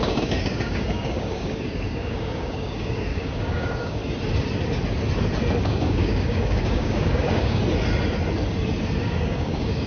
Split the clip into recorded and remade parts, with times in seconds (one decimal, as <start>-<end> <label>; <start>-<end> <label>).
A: 0.0-4.0 remade; 4.0-5.6 recorded; 5.6-7.6 remade; 7.6-9.0 recorded; 9.0-9.9 remade